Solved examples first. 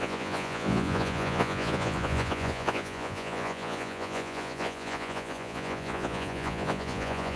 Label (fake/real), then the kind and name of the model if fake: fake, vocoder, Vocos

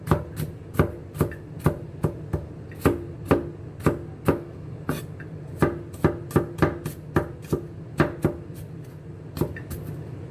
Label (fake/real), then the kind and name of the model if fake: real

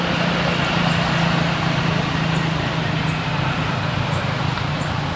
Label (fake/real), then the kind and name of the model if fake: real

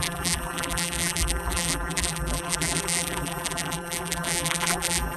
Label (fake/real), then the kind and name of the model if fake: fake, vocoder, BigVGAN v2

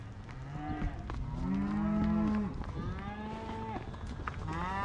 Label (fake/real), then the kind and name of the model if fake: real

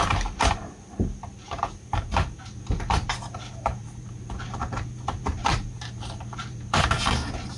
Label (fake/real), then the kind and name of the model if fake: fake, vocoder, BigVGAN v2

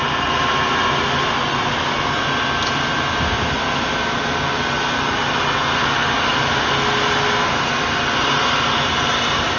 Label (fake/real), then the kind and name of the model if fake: real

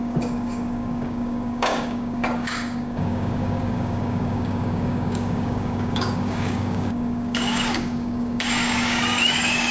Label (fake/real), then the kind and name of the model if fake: fake, codec, DAC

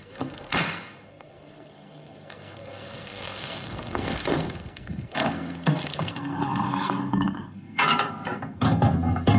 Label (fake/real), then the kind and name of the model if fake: fake, codec, SNAC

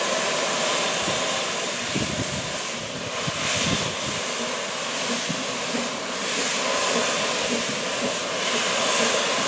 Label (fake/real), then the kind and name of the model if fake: real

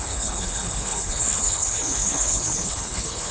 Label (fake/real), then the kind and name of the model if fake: fake, codec, HILCodec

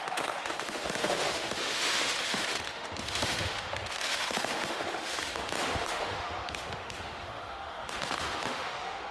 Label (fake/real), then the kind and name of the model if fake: fake, autoencoder, DAC-VAE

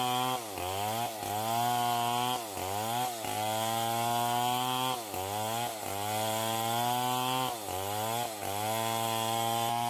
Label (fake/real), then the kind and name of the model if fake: real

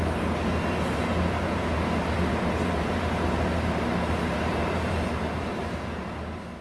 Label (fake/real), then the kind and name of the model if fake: fake, vocoder, BigVGAN v2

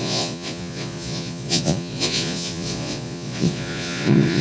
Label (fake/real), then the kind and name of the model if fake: fake, vocoder, Vocos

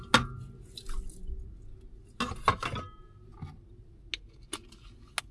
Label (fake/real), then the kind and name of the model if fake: real